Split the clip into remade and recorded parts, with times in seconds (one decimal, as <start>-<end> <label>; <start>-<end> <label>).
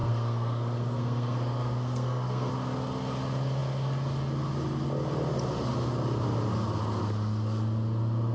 0.0-2.5 remade; 2.5-8.3 recorded